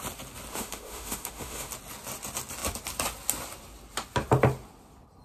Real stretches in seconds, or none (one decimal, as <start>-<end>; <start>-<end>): 0.0-0.5; 1.7-5.2